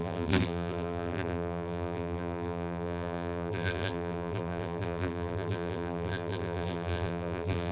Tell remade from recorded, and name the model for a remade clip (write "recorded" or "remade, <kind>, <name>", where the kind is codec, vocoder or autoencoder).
remade, vocoder, BigVGAN v2